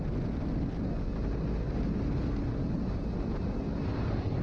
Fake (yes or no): no